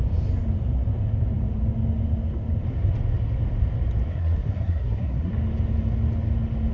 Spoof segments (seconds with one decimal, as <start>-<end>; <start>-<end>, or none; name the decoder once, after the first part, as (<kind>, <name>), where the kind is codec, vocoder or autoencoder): 4.1-5.3 (codec, SNAC)